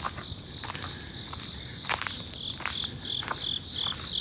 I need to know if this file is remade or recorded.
recorded